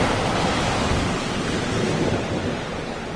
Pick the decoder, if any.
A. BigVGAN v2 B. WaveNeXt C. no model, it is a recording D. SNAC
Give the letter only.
C